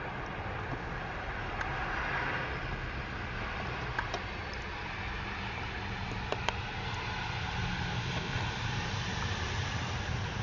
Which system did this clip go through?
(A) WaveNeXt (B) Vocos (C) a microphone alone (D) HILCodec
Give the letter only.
C